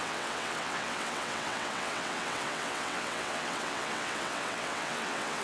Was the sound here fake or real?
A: fake